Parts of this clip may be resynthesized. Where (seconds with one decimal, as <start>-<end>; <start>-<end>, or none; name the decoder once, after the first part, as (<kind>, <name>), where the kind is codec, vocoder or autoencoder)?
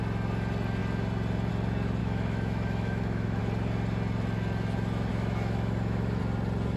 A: 2.0-3.4 (autoencoder, DAC-VAE); 5.1-6.2